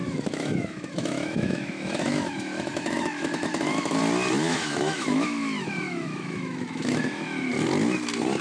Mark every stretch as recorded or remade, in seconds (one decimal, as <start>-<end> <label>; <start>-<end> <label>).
0.0-4.0 remade; 4.0-4.5 recorded; 4.5-7.5 remade; 7.5-8.4 recorded